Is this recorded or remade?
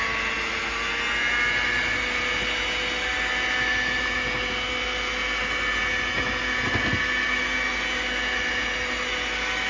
recorded